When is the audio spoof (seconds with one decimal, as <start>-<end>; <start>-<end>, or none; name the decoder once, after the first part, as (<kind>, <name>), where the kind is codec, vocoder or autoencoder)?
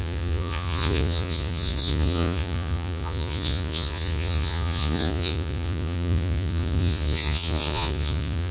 0.0-8.5 (vocoder, Vocos)